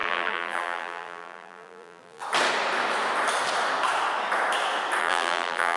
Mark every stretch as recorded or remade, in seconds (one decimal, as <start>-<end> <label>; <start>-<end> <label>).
0.0-2.2 remade; 2.2-5.0 recorded; 5.0-5.8 remade